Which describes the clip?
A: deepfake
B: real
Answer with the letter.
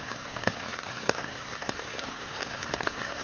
A